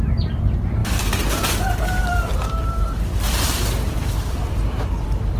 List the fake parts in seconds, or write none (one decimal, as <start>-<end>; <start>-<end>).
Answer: 0.8-1.6; 2.0-5.4